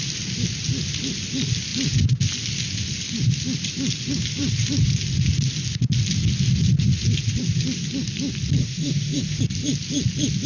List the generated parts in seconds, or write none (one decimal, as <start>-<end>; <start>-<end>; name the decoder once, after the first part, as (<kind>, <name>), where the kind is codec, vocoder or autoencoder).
8.6-9.4 (autoencoder, DAC-VAE)